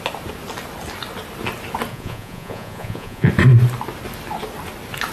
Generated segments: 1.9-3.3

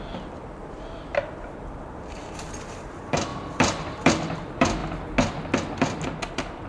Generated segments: 0.0-4.8; 6.3-6.7

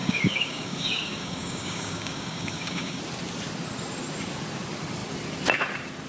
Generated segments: 0.0-3.0

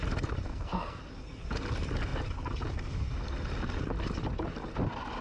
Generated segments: 0.5-1.0

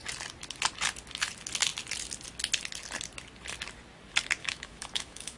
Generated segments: 4.4-5.4

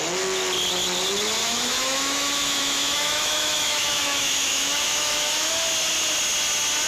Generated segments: 1.4-5.5

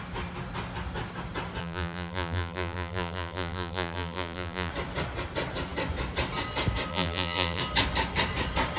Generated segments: 1.6-4.7; 6.9-7.6